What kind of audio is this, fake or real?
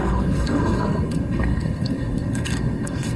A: fake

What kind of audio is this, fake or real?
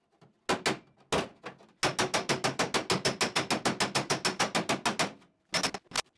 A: real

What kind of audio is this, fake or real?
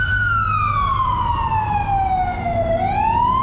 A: real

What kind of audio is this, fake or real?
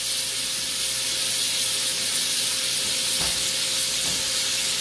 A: real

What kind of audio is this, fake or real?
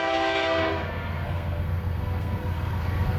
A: fake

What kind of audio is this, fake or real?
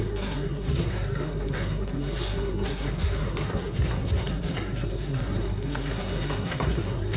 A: fake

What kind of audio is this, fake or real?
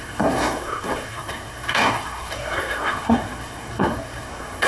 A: fake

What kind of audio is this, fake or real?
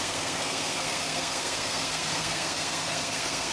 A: fake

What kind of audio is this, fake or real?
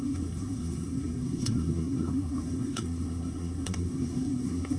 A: fake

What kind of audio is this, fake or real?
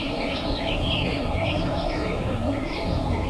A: fake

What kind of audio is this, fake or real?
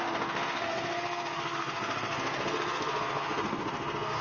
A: fake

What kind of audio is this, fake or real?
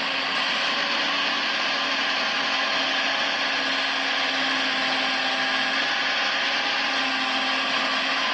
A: real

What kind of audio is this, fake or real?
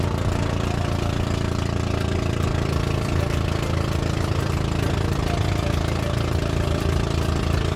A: real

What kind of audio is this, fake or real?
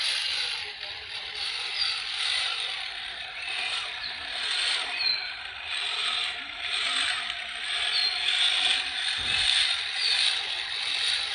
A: real